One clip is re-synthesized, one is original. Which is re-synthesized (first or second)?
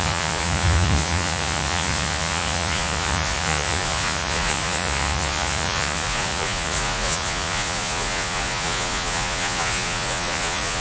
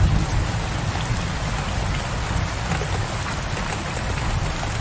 first